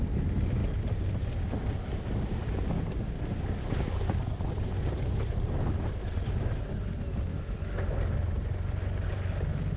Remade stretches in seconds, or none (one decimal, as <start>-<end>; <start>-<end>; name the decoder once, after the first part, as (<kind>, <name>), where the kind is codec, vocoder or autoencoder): 7.3-8.0 (autoencoder, DAC-VAE)